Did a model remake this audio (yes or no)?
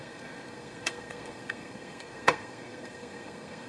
yes